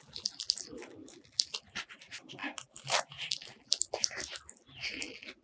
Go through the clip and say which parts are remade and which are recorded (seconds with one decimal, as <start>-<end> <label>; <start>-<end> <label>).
0.0-5.4 recorded